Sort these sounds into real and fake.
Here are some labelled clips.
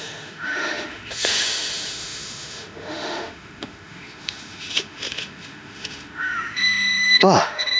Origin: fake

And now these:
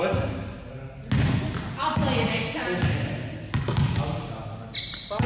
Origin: real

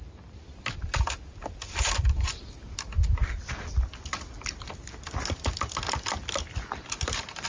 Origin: real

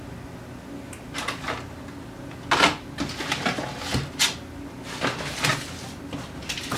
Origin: real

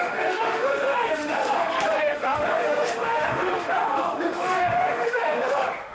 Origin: fake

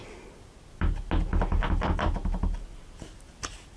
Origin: real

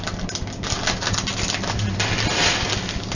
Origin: real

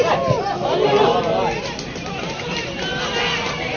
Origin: real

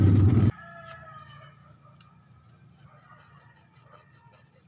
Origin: real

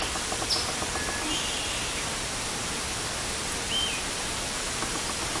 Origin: real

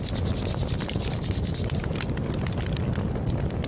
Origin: real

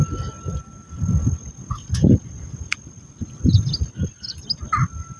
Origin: real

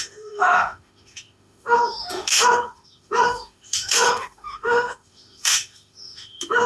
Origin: fake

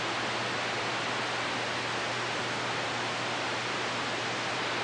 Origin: real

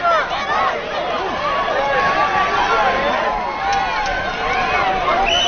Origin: real